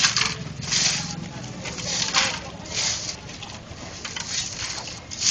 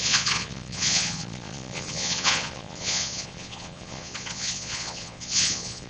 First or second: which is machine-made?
second